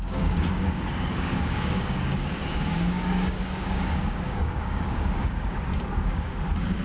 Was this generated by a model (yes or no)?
yes